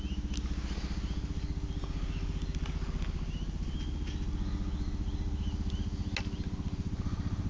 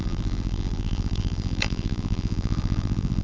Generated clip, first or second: second